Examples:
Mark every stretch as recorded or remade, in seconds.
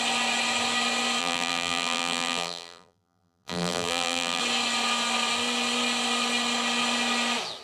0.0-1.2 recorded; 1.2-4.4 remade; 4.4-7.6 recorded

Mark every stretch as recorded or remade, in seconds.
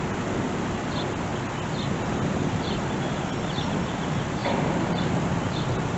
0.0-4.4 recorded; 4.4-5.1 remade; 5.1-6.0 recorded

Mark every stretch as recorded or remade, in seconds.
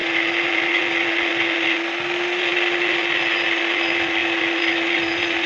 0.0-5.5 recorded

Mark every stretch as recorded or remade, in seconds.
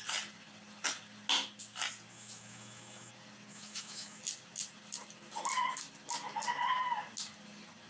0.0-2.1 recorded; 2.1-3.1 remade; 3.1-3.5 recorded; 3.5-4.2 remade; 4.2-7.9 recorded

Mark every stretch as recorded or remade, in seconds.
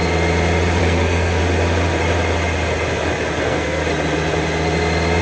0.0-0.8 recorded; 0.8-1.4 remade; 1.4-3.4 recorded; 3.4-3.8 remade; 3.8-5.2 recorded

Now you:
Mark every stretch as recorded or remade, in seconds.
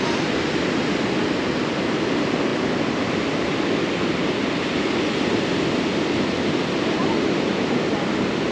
0.0-8.5 recorded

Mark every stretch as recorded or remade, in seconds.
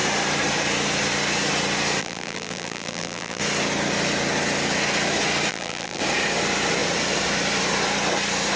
0.0-2.0 recorded; 2.0-3.4 remade; 3.4-5.5 recorded; 5.5-6.0 remade; 6.0-8.6 recorded